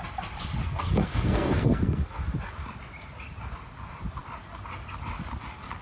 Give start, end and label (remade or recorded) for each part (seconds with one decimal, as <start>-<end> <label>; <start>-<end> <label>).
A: 0.0-0.6 recorded; 0.6-2.2 remade; 2.2-5.8 recorded

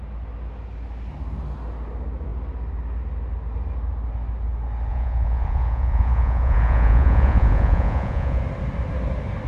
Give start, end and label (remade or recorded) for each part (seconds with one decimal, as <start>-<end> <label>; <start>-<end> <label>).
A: 0.0-4.9 recorded; 4.9-8.4 remade; 8.4-9.5 recorded

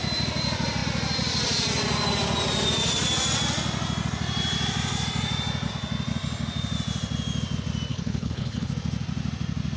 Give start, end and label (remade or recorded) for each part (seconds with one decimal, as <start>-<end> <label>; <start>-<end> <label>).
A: 0.0-7.9 recorded; 7.9-8.7 remade; 8.7-9.8 recorded

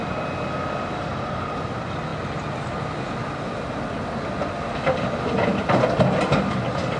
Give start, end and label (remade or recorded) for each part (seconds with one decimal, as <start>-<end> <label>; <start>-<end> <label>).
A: 0.0-7.0 recorded

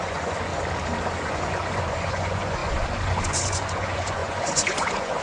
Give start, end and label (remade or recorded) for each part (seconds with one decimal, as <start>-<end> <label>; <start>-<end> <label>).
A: 0.0-0.5 remade; 0.5-1.1 recorded; 1.1-5.2 remade

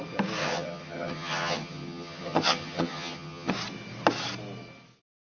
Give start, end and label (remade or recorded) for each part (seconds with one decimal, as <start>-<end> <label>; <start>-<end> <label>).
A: 0.0-0.4 recorded; 0.4-3.5 remade; 3.5-5.2 recorded

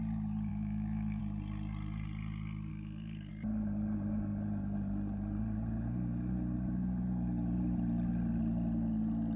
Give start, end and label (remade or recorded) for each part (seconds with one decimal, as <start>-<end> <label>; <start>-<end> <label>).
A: 0.0-0.5 recorded; 0.5-1.2 remade; 1.2-2.7 recorded; 2.7-3.3 remade; 3.3-9.4 recorded

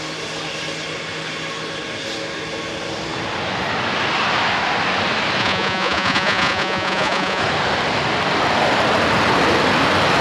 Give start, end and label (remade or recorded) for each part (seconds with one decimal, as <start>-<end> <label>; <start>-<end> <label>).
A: 0.0-5.4 recorded; 5.4-7.4 remade; 7.4-10.2 recorded